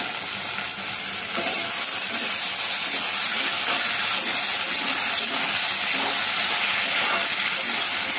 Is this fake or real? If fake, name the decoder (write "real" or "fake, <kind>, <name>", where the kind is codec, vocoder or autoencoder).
real